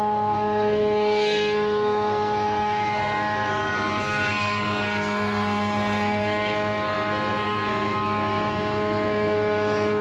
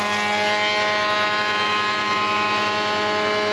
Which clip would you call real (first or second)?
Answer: second